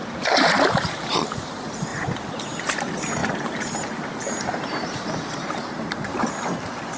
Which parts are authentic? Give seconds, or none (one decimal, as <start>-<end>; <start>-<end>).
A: 1.9-2.6